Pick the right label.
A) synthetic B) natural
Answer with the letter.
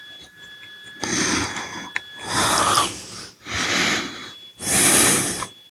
B